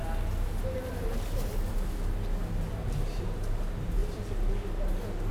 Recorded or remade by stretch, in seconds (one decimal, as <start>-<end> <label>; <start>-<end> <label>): 0.0-3.2 recorded; 3.2-4.0 remade; 4.0-5.3 recorded